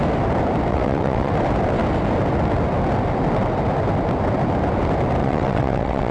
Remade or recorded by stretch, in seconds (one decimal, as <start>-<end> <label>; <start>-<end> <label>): 0.0-0.7 recorded; 0.7-1.3 remade; 1.3-5.2 recorded; 5.2-6.1 remade